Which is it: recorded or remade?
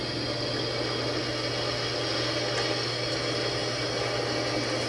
recorded